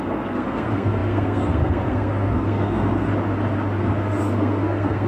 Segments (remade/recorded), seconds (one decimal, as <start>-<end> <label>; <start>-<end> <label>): 0.0-3.1 remade; 3.1-3.8 recorded; 3.8-5.1 remade